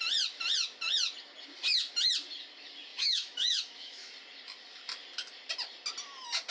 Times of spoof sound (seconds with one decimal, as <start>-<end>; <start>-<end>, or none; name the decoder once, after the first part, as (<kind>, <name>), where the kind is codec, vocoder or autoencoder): 2.9-4.1 (autoencoder, DAC-VAE)

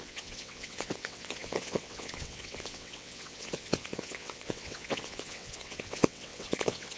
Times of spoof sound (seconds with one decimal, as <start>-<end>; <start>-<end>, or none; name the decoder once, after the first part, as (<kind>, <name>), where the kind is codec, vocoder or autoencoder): 0.0-7.0 (vocoder, WaveNeXt)

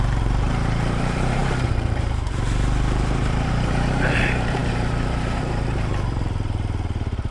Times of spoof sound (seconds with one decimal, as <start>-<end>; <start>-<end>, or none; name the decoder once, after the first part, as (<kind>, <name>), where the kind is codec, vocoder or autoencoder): 0.0-7.3 (vocoder, BigVGAN v2)

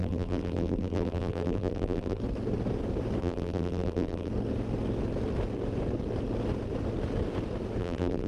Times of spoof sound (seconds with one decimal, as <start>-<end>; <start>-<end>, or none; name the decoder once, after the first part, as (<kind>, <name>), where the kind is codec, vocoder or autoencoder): 0.0-2.2 (vocoder, BigVGAN v2); 3.2-4.3; 7.8-8.3

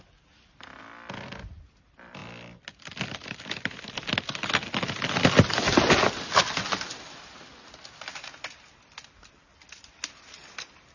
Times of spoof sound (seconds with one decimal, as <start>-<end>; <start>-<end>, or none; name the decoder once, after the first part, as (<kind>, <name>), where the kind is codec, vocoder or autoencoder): none

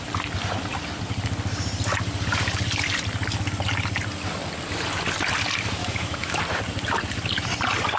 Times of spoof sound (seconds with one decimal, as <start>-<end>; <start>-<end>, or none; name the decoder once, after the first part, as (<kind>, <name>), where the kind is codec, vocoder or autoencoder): 5.8-6.4 (autoencoder, DAC-VAE)